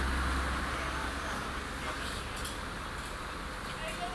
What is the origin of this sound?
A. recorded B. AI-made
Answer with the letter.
A